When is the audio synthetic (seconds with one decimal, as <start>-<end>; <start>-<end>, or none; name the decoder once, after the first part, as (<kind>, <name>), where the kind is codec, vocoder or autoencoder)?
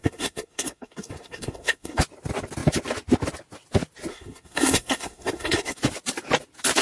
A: 0.0-2.0 (codec, SNAC); 4.1-5.8